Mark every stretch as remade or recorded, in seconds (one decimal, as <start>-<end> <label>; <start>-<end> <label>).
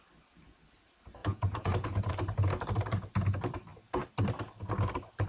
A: 0.0-1.2 recorded; 1.2-2.1 remade; 2.1-5.3 recorded